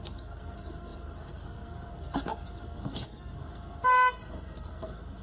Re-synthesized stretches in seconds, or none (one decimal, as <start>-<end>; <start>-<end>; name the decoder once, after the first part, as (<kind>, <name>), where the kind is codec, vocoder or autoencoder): 0.0-5.2 (codec, SNAC)